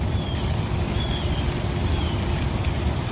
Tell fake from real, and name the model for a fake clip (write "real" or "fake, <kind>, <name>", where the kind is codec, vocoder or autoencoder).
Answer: real